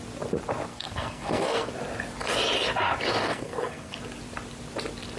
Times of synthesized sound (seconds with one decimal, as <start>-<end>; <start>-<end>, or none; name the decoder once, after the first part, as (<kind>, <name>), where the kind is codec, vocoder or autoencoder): 0.7-1.7 (codec, SNAC); 3.2-4.0